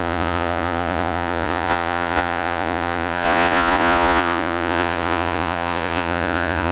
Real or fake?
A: fake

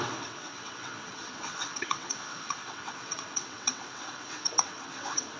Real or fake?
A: fake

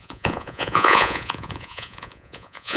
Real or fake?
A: fake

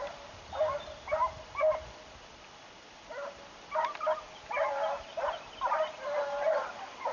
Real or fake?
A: real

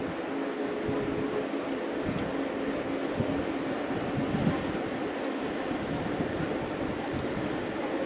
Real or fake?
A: real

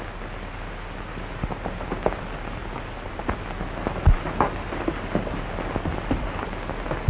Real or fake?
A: real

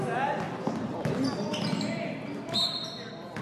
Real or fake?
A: real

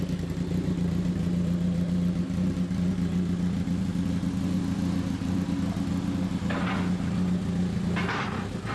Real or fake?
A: real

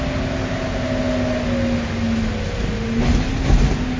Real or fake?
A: real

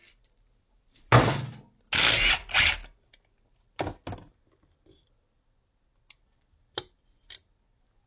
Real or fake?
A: real